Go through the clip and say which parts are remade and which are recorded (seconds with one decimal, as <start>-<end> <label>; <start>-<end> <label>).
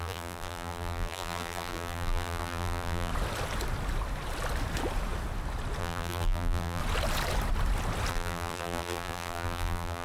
0.0-3.1 remade; 3.1-5.8 recorded; 5.8-6.8 remade; 6.8-8.1 recorded; 8.1-10.0 remade